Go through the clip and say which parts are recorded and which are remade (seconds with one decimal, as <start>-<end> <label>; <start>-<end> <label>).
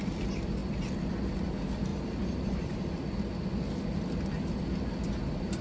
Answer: 0.0-5.6 recorded